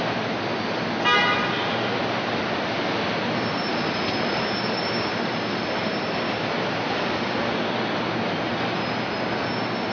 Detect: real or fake real